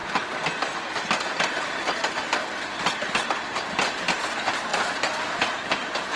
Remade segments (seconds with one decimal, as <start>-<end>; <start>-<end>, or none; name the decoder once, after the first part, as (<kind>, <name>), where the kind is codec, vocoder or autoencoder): 4.7-5.4 (vocoder, BigVGAN v2)

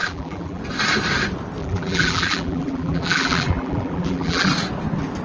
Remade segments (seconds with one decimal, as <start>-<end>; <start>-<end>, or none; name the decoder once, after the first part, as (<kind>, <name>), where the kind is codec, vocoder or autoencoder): 0.0-0.6 (vocoder, BigVGAN v2); 1.6-4.5

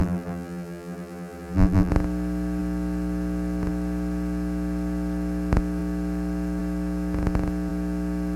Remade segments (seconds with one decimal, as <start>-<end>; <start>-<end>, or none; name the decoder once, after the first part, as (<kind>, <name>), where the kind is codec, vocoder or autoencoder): 0.0-1.9 (vocoder, BigVGAN v2)

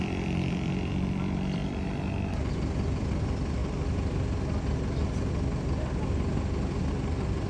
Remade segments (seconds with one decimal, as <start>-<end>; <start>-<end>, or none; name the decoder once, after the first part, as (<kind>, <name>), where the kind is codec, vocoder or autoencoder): 0.0-1.6 (vocoder, BigVGAN v2); 3.1-3.6; 6.9-7.5

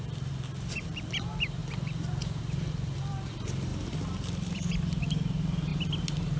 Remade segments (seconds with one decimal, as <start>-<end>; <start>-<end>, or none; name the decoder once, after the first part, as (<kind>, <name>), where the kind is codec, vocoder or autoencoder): 0.0-1.6 (vocoder, BigVGAN v2); 2.7-5.7

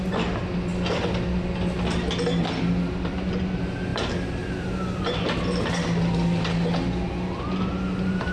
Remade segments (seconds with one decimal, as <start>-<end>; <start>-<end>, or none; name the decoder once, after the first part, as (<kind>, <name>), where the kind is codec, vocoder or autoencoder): none